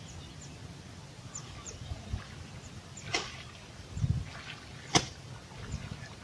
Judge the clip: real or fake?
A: real